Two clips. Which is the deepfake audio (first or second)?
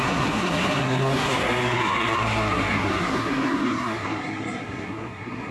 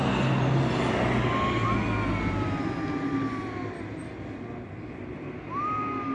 first